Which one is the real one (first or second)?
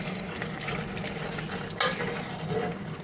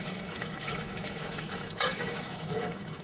first